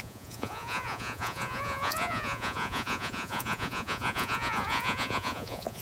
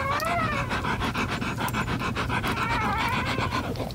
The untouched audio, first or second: second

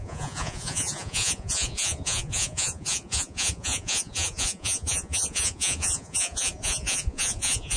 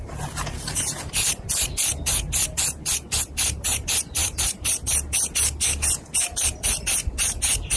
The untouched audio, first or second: second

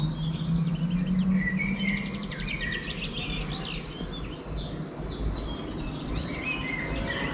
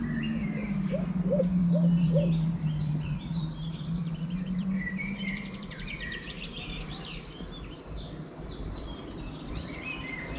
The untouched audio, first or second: first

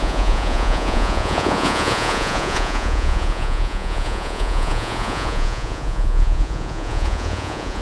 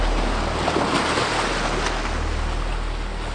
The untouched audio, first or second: second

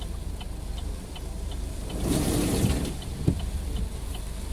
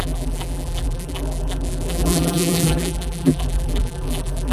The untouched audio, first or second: first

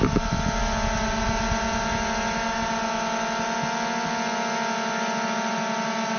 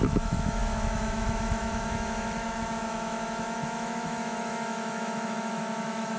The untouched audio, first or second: first